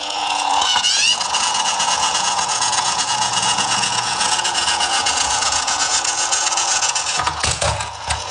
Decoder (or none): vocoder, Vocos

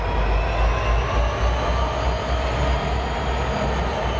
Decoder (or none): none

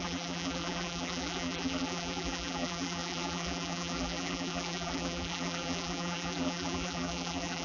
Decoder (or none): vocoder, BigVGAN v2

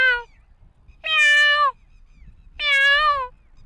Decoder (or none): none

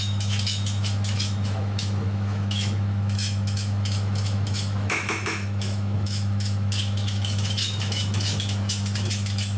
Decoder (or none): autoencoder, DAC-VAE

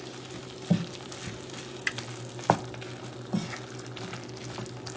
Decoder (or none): none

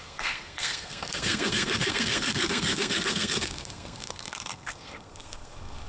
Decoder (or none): codec, SNAC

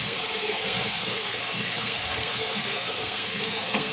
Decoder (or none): codec, SNAC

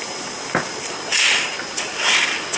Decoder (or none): none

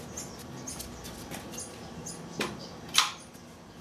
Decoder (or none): none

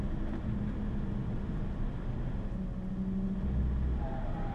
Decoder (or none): none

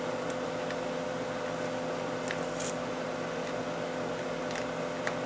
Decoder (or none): none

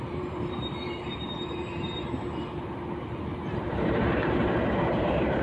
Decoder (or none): vocoder, BigVGAN v2